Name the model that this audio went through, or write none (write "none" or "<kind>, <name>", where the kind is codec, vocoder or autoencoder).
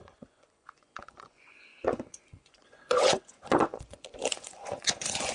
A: vocoder, Vocos